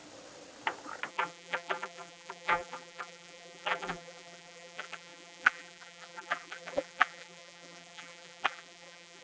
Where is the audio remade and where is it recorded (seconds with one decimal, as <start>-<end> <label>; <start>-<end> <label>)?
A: 0.0-1.1 recorded; 1.1-9.2 remade